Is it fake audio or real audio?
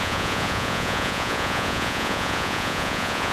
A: fake